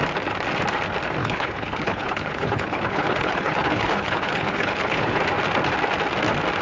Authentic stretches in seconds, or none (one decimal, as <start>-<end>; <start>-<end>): 0.0-1.2; 5.2-6.6